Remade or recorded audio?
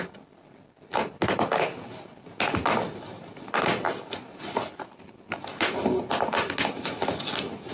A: recorded